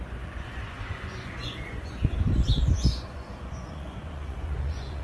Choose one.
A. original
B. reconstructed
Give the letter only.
B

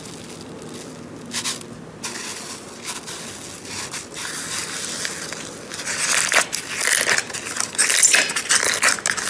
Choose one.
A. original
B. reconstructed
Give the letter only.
A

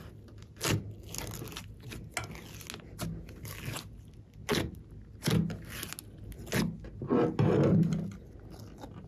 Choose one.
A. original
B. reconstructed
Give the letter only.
A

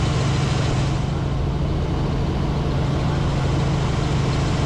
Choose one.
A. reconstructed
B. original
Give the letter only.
B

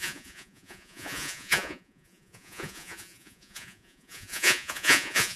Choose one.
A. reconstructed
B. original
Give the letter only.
A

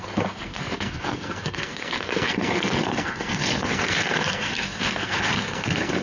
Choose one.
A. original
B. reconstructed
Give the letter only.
B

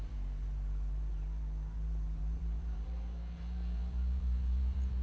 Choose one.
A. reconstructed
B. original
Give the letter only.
A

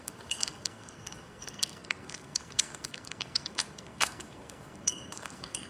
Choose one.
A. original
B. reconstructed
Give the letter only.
B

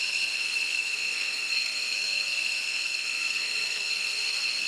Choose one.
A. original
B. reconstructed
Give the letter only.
B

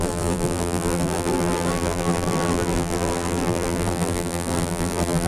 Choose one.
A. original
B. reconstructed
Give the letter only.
B